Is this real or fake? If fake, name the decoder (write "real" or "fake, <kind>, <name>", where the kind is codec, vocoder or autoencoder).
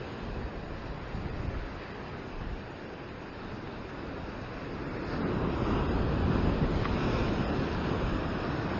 real